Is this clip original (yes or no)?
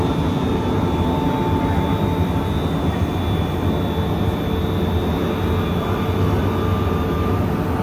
yes